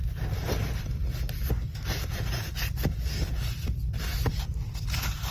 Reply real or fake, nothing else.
real